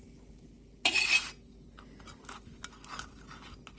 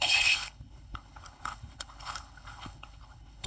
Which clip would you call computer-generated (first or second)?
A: second